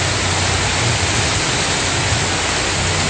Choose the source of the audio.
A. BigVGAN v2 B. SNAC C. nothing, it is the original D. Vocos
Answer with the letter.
C